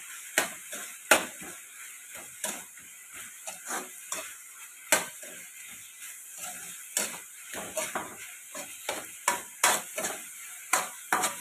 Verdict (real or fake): real